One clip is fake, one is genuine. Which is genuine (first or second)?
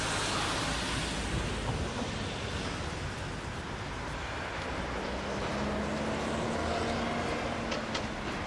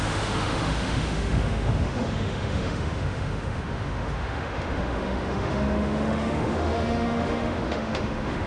first